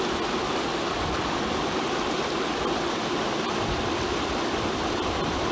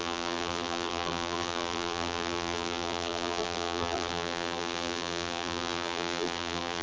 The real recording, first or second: first